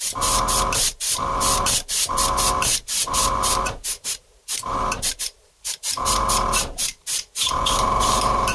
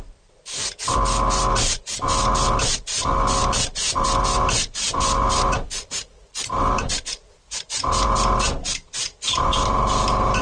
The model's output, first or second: first